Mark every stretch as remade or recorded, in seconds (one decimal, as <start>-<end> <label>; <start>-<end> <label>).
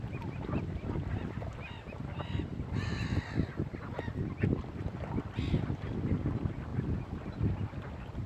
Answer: 0.0-8.3 recorded